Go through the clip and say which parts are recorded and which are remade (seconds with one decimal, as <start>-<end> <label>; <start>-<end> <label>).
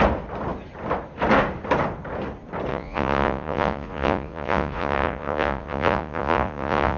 0.0-2.7 recorded; 2.7-7.0 remade